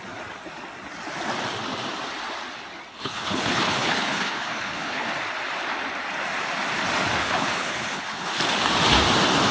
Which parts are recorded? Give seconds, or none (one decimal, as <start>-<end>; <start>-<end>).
0.0-2.9; 5.1-7.2; 8.3-9.5